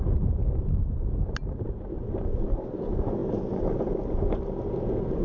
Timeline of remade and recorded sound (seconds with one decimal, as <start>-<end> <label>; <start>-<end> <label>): 0.0-5.2 recorded